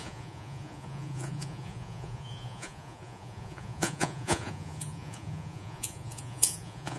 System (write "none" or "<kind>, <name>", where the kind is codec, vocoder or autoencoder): vocoder, Vocos